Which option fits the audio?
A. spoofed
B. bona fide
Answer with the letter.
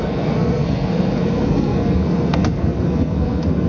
A